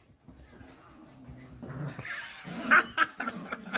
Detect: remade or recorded recorded